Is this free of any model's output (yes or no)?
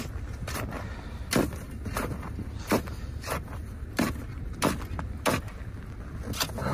yes